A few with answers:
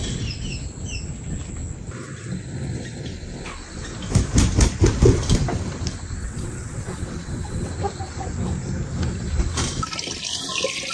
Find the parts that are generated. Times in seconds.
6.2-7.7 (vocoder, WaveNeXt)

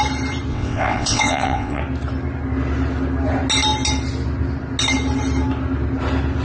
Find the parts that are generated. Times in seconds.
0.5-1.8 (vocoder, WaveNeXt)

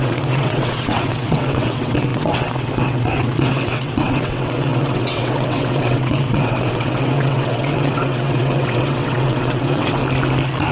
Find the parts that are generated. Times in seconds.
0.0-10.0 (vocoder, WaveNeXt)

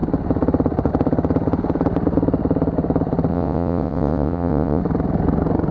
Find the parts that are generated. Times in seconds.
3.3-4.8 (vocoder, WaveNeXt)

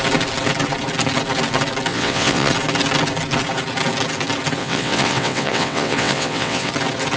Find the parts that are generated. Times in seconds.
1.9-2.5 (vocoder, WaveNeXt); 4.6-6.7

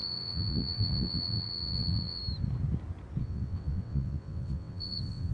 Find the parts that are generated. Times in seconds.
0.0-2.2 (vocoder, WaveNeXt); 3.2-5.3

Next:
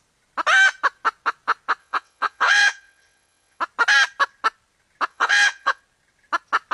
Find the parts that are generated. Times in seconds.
1.8-3.6 (vocoder, WaveNeXt); 5.1-5.8